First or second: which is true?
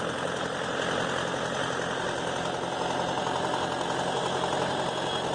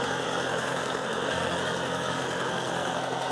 first